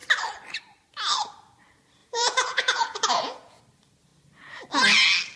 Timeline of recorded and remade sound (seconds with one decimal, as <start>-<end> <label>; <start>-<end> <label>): 0.0-2.0 recorded; 2.0-3.6 remade; 3.6-5.4 recorded